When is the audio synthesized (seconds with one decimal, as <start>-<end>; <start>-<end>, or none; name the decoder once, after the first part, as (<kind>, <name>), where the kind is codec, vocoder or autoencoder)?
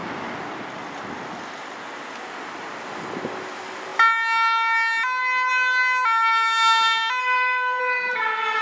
7.2-7.8 (codec, SNAC)